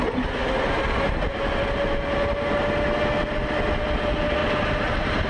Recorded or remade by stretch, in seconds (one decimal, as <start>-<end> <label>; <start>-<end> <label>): 0.0-4.4 recorded; 4.4-5.3 remade